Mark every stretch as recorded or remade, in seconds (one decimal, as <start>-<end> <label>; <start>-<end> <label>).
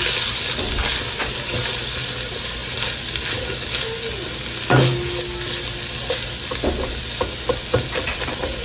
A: 0.0-8.6 recorded